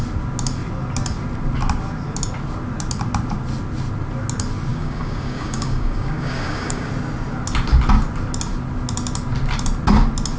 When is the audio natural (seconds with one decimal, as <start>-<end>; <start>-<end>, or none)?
0.0-4.7; 6.9-10.4